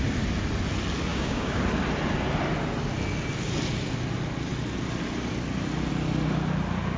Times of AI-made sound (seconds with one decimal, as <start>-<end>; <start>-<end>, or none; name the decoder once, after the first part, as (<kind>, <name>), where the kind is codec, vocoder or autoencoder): 1.1-1.6 (codec, DAC)